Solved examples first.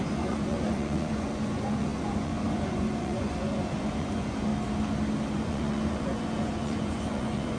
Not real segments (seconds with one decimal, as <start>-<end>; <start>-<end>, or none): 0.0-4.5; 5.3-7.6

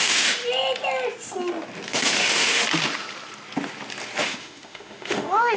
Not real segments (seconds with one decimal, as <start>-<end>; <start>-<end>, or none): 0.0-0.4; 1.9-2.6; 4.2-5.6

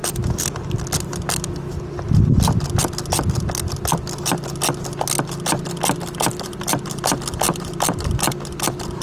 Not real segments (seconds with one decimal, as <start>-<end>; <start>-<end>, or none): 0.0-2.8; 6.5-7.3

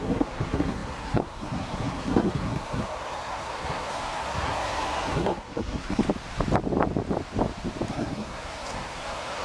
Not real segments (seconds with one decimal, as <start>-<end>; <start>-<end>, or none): 0.0-6.0; 7.9-9.4

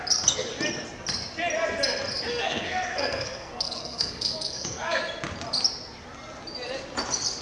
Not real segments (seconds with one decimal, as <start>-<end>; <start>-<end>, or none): 2.3-5.0

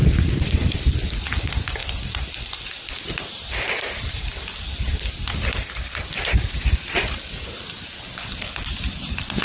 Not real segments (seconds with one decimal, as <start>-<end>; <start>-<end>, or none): none